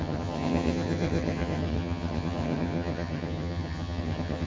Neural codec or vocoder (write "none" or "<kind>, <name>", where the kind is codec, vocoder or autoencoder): vocoder, HiFi-GAN